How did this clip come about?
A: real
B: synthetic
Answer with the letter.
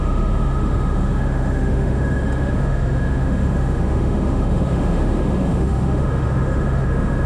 B